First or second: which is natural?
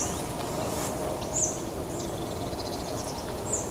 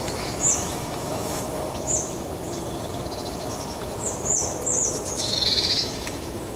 first